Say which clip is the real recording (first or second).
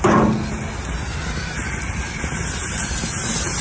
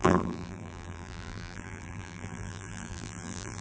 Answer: first